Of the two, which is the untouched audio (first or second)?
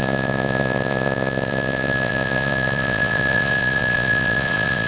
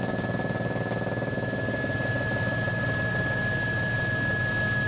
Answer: second